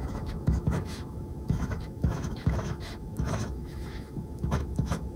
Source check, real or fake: fake